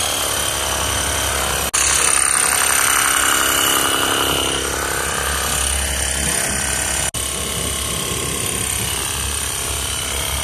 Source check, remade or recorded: recorded